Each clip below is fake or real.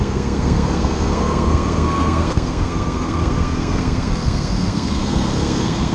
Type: fake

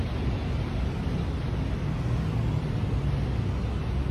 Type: real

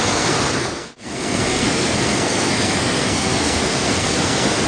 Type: fake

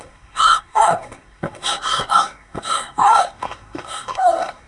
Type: fake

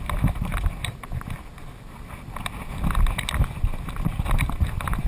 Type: real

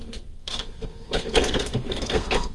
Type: fake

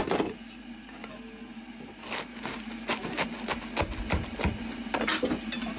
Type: real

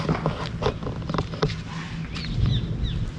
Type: real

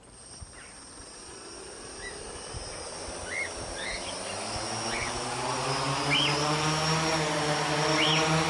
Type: real